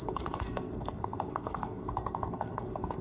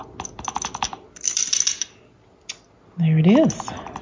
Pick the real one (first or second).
second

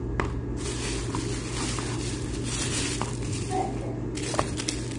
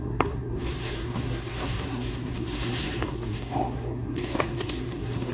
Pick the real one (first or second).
first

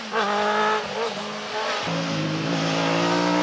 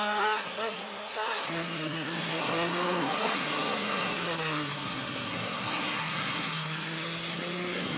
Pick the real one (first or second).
first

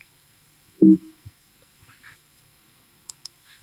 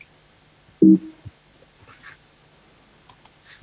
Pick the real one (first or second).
second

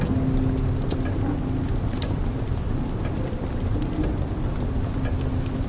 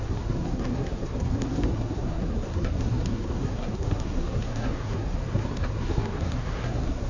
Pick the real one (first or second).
first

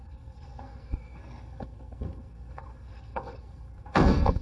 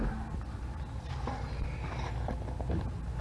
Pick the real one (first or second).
second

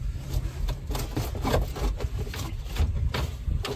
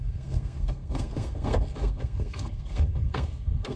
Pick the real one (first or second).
first